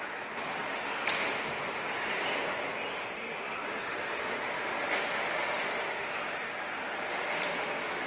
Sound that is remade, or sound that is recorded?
recorded